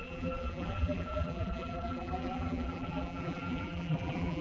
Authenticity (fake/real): fake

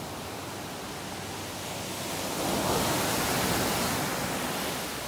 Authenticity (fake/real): real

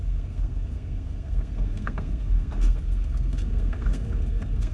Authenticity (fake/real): fake